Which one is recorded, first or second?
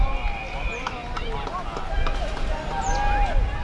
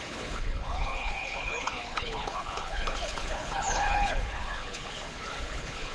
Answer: first